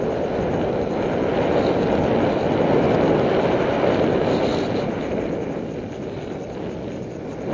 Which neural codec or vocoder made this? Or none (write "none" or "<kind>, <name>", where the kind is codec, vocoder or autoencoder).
none